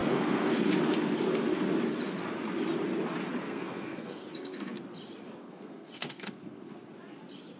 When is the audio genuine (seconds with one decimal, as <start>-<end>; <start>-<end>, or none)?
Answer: 0.7-3.4; 4.8-5.4; 6.9-7.6